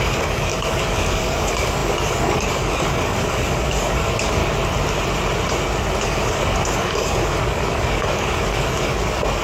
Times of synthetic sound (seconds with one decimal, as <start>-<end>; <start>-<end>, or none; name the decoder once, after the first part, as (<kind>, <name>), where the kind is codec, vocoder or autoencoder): 0.0-4.4 (codec, DAC); 6.0-9.4